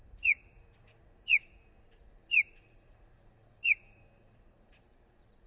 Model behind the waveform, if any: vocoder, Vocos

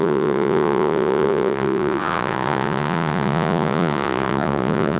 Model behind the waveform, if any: vocoder, Vocos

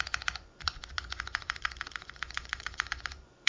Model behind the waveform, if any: vocoder, Vocos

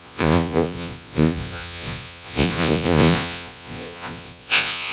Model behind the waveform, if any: vocoder, Vocos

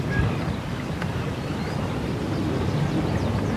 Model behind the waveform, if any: none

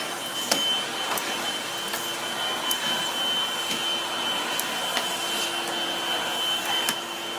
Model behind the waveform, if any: none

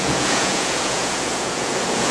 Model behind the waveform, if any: vocoder, Vocos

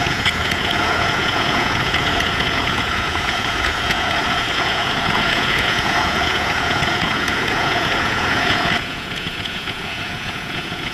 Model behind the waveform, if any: vocoder, Vocos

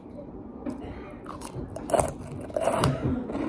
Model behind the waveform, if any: none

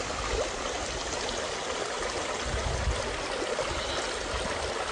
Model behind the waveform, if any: none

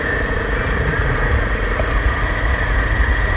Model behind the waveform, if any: vocoder, Vocos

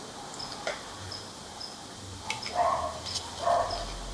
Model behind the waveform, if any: none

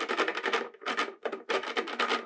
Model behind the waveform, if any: none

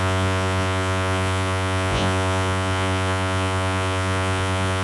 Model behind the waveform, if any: vocoder, Vocos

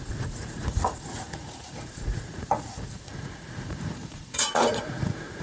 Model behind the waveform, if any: vocoder, Vocos